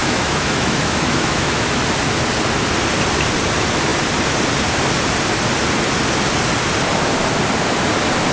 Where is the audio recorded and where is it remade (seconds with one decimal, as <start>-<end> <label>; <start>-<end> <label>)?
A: 0.0-1.8 remade; 1.8-8.3 recorded